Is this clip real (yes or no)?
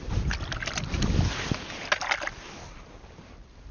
yes